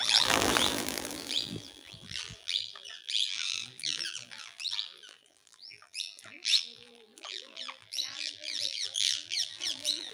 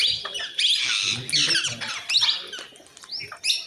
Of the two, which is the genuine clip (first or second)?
second